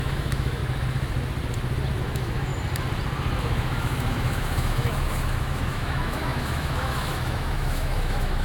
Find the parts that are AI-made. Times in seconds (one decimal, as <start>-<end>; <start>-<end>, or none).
0.0-0.6; 2.0-2.5; 3.4-8.4